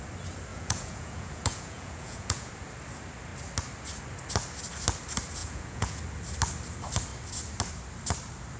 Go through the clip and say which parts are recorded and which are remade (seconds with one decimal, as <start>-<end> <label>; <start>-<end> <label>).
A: 0.0-0.5 recorded; 0.5-2.5 remade; 2.5-5.4 recorded; 5.4-6.0 remade; 6.0-8.6 recorded